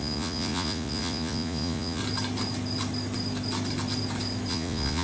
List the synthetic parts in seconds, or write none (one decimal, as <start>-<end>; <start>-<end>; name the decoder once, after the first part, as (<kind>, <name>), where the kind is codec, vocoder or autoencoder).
0.0-2.0 (vocoder, Vocos); 4.5-5.0